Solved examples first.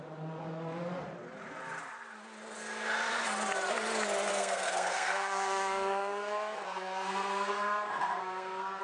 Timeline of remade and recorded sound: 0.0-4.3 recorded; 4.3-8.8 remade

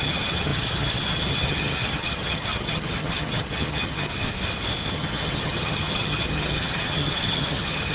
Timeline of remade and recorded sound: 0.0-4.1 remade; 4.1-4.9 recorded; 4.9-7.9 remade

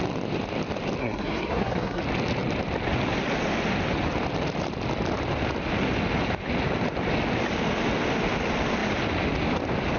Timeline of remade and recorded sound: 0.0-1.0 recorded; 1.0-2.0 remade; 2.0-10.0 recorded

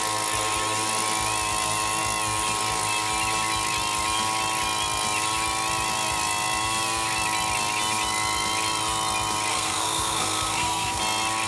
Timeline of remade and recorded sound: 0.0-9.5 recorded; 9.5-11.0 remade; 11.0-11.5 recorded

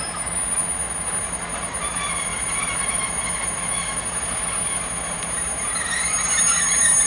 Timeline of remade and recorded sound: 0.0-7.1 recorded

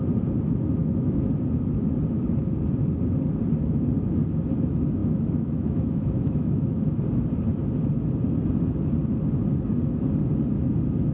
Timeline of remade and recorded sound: 0.0-0.8 recorded; 0.8-1.3 remade; 1.3-5.0 recorded; 5.0-7.0 remade; 7.0-11.1 recorded